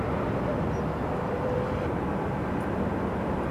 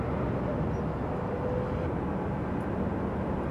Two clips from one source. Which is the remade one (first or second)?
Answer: first